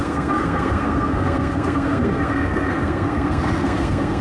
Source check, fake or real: fake